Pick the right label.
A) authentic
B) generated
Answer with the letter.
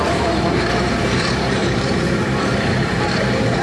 B